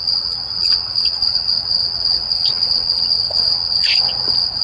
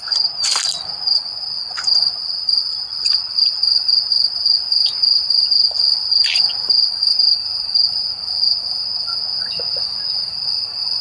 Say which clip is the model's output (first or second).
first